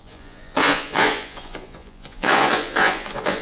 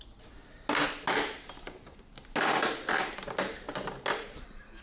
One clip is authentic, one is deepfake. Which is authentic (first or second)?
second